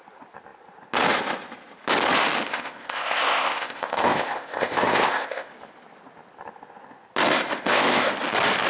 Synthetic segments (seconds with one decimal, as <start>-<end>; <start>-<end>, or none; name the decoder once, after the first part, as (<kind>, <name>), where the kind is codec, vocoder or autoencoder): 2.5-5.5 (codec, ZipCodec); 7.6-8.1